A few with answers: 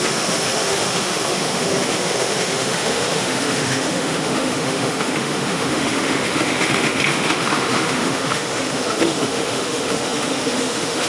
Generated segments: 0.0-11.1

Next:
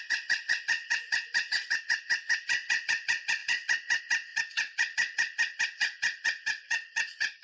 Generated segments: 0.0-7.4

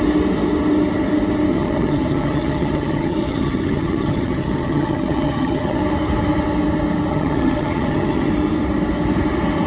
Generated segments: 1.5-5.8; 7.1-8.3

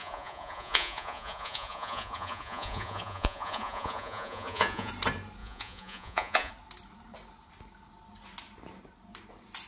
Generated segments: 0.0-4.9; 5.4-6.5

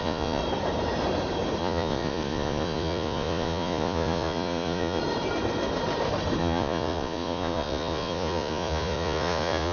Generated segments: 0.0-0.4; 1.6-5.0; 6.4-9.7

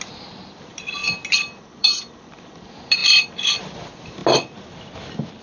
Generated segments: 0.0-1.0; 1.6-4.2

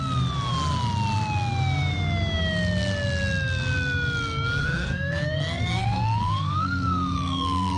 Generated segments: 4.6-7.8